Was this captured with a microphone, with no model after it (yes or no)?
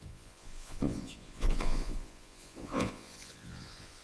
no